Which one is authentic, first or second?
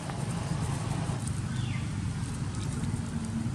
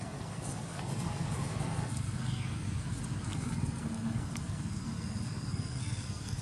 first